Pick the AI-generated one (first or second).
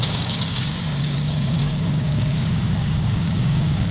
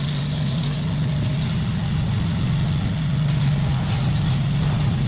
first